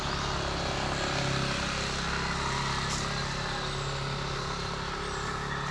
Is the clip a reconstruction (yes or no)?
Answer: no